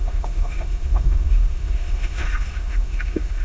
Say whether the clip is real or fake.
fake